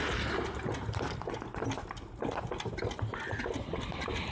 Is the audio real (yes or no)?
yes